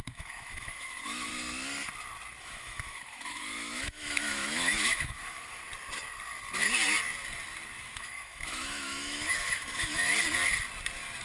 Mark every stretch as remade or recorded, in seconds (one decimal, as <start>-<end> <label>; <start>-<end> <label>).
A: 0.0-1.3 remade; 1.3-2.4 recorded; 2.4-5.6 remade; 5.6-7.8 recorded; 7.8-10.1 remade; 10.1-11.2 recorded